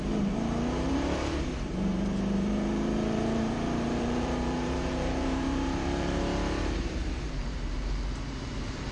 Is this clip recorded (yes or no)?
no